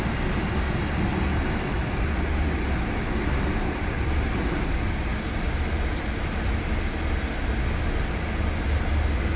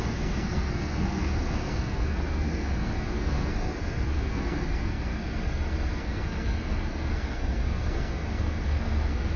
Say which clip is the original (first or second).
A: first